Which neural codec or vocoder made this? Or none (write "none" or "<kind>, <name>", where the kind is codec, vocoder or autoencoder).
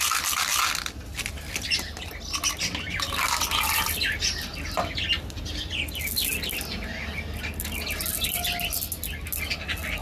none